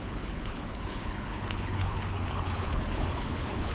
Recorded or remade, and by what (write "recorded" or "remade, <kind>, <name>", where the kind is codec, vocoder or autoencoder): remade, codec, HILCodec